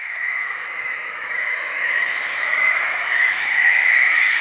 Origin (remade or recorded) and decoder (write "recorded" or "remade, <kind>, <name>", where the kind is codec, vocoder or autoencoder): remade, autoencoder, DAC-VAE